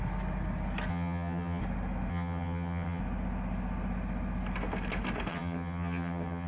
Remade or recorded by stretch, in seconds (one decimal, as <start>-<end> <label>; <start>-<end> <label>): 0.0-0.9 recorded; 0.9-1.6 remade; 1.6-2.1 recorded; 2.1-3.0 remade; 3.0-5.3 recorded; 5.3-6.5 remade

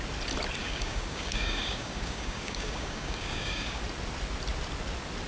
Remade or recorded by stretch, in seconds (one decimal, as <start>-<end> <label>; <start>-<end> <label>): 0.0-0.6 recorded; 0.6-3.8 remade; 3.8-5.3 recorded

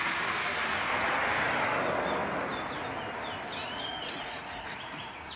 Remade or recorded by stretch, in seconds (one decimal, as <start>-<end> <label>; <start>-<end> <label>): 0.0-3.6 recorded; 3.6-5.4 remade

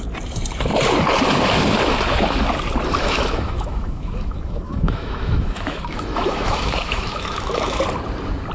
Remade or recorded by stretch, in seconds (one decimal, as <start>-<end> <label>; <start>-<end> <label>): 0.0-3.0 recorded; 3.0-7.8 remade; 7.8-8.5 recorded